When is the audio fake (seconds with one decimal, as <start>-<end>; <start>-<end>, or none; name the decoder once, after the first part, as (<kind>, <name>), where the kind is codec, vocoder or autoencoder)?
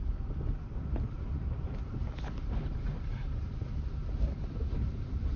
0.0-2.0 (vocoder, BigVGAN v2); 4.7-5.4